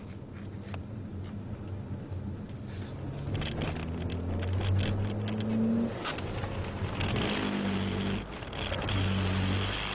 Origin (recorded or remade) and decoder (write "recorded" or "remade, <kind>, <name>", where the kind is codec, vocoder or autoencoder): recorded